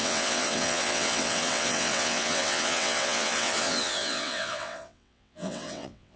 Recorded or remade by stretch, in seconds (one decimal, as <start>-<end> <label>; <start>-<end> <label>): 0.0-6.2 remade